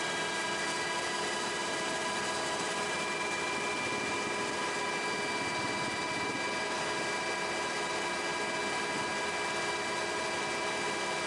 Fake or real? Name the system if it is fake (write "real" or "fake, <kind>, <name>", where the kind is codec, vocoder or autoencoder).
real